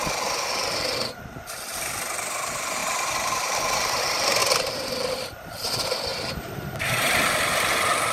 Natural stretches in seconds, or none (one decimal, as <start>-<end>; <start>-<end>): 0.0-2.8; 4.0-6.1; 7.2-8.1